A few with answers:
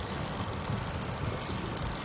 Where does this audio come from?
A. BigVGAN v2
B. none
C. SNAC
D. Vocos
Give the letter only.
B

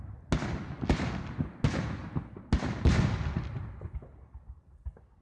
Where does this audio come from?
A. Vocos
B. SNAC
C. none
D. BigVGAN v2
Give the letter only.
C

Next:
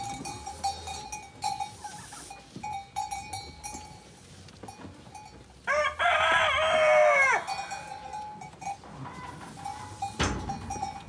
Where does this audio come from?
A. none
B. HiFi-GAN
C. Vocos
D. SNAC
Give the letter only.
A